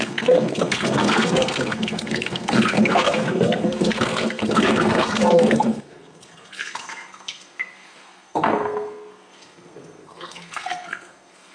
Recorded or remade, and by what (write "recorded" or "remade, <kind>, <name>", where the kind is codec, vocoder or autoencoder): remade, codec, SNAC